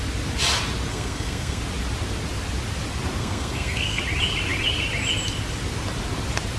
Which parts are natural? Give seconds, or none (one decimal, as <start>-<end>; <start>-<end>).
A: 0.0-0.9; 1.6-3.2; 4.0-6.6

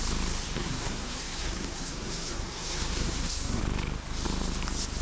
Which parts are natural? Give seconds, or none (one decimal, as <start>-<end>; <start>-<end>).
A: 0.0-0.6; 3.6-5.0

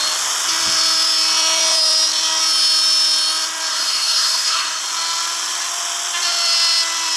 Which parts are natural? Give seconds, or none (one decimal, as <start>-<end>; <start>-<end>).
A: 0.0-3.7; 4.8-7.2